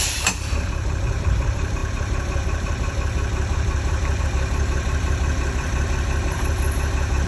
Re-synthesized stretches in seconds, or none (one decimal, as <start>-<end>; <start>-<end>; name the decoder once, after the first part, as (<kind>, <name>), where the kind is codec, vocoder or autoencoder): 0.0-7.3 (vocoder, BigVGAN v2)